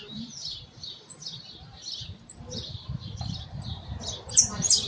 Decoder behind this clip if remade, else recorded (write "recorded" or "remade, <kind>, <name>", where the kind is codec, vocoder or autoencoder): remade, vocoder, BigVGAN v2